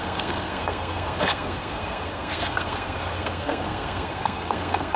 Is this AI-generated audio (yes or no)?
yes